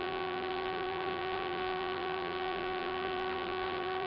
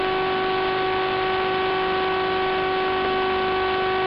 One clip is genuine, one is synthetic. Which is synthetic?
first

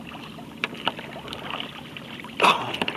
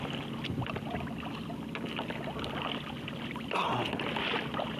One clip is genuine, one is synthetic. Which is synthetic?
first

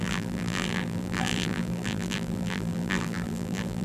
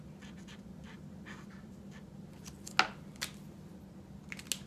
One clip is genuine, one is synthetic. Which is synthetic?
first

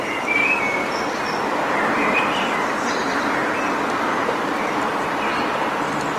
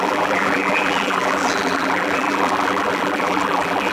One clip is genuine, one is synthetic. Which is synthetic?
second